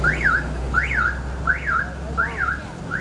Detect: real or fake real